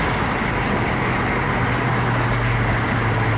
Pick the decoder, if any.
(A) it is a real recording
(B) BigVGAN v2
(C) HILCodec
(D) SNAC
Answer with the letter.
A